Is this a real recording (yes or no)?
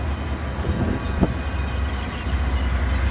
yes